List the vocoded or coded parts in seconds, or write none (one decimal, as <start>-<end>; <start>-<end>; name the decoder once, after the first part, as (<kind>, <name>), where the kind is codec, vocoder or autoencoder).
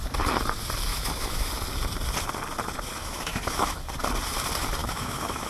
0.9-1.5 (autoencoder, DAC-VAE); 3.0-3.9; 4.8-5.5